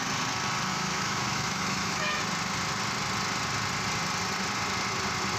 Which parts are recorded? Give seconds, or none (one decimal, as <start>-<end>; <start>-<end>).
0.0-0.7; 2.2-5.4